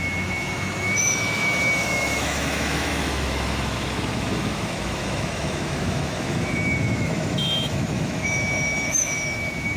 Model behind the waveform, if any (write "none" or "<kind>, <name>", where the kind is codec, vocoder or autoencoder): autoencoder, DAC-VAE